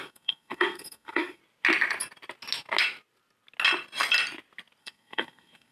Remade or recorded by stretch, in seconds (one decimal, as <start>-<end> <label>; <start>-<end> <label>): 0.0-1.4 remade; 1.4-4.8 recorded; 4.8-5.7 remade